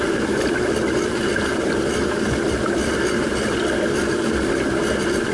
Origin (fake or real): real